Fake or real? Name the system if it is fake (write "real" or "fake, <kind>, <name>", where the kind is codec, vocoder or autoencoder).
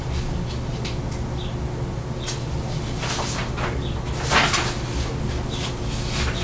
real